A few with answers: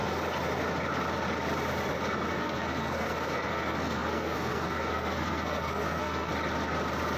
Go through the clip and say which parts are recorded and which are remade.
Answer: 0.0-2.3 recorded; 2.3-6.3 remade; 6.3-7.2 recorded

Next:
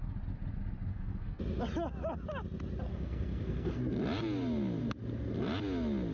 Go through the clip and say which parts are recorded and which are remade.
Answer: 0.0-0.9 recorded; 0.9-1.4 remade; 1.4-2.9 recorded; 2.9-3.8 remade; 3.8-6.1 recorded